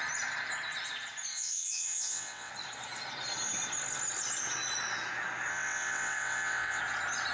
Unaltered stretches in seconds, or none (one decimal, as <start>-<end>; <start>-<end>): 0.0-1.3; 2.5-5.5; 6.8-7.3